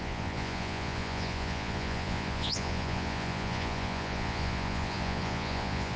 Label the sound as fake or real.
fake